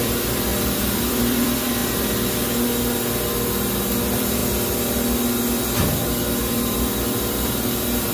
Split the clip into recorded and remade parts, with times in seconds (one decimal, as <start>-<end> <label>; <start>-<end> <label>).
0.0-1.8 remade; 1.8-4.0 recorded; 4.0-4.4 remade; 4.4-6.4 recorded; 6.4-8.1 remade